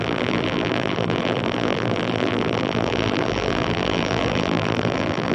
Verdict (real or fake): fake